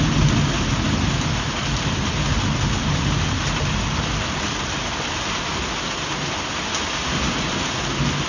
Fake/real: real